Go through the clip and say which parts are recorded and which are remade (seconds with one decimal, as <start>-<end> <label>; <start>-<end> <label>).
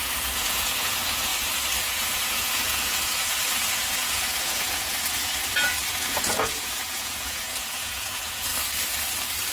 0.0-1.3 remade; 1.3-1.8 recorded; 1.8-5.3 remade; 5.3-5.9 recorded; 5.9-8.5 remade; 8.5-9.5 recorded